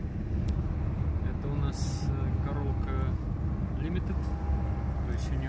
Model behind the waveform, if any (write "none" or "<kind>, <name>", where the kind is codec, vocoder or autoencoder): none